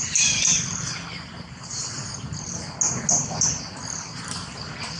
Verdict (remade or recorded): recorded